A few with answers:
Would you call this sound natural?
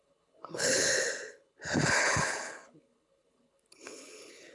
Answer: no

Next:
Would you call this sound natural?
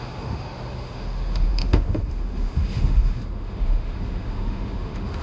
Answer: no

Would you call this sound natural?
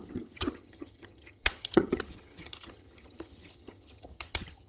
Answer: no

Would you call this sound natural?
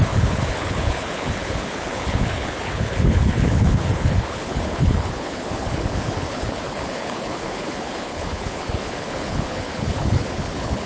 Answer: no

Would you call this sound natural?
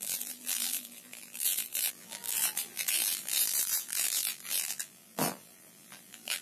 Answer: no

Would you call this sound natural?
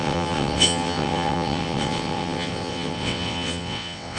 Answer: no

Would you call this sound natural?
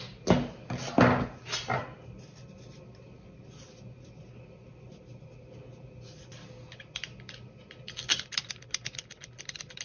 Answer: yes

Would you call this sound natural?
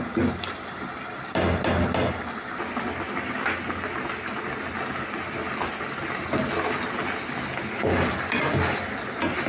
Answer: yes